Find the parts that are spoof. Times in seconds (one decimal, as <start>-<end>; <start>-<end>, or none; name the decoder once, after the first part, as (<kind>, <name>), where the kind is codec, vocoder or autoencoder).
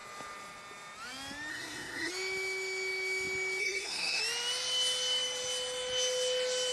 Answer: 1.5-2.1 (codec, SNAC); 3.6-4.2